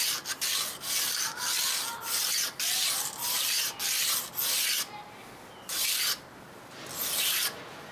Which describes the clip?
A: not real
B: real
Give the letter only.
B